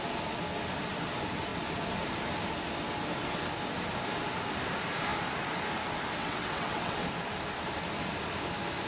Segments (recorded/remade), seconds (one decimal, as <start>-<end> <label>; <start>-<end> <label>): 0.0-6.2 recorded; 6.2-7.0 remade; 7.0-8.9 recorded